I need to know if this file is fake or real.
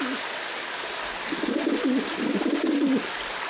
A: real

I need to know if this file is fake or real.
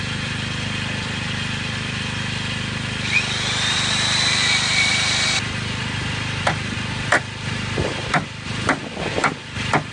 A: fake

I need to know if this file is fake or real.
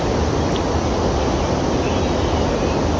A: real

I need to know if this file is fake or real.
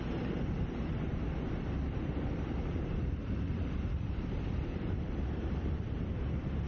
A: fake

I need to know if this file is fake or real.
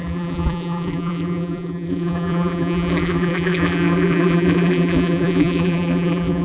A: fake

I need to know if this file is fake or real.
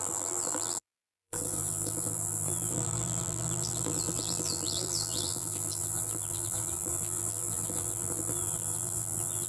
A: fake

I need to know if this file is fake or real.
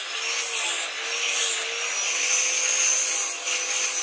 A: real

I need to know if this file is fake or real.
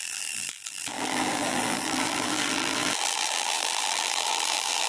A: fake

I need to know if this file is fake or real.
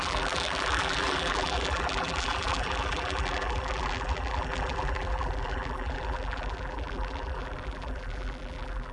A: fake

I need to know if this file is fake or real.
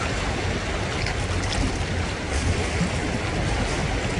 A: real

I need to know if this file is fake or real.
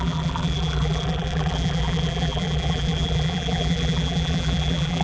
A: fake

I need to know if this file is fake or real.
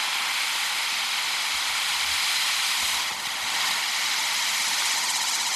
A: real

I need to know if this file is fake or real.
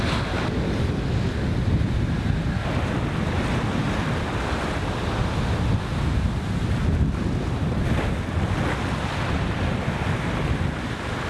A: real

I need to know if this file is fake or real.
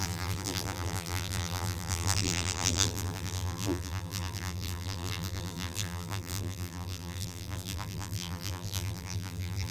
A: fake